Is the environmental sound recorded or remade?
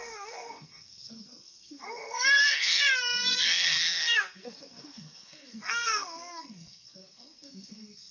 remade